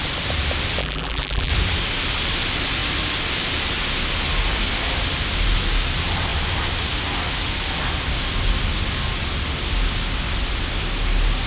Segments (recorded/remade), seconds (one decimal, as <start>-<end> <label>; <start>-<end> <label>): 0.0-0.8 recorded; 0.8-1.5 remade; 1.5-11.5 recorded